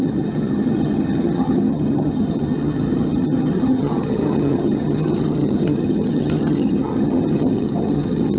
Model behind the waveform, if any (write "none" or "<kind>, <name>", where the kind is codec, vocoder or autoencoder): vocoder, HiFi-GAN